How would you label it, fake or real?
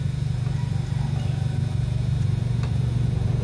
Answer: real